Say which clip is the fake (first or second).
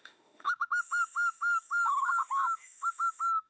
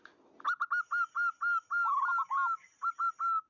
first